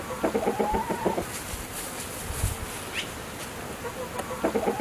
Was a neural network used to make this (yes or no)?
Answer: no